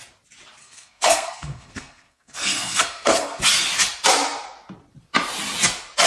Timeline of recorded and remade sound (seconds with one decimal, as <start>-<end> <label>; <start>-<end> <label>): 0.0-0.6 recorded; 0.6-3.4 remade; 3.4-6.1 recorded